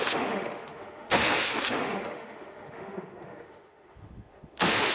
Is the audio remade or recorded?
remade